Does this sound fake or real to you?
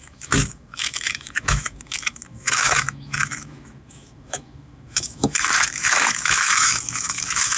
fake